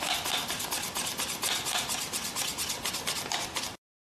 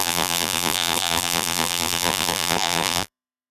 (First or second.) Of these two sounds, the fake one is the second